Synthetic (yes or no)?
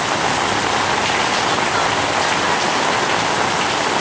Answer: no